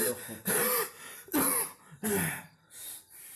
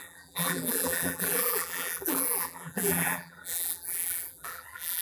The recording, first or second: first